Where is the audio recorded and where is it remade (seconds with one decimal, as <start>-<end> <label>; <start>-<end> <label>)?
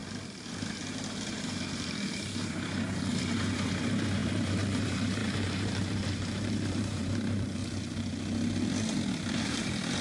0.0-0.5 recorded; 0.5-7.6 remade; 7.6-9.3 recorded; 9.3-10.0 remade